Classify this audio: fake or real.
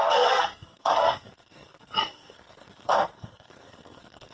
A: fake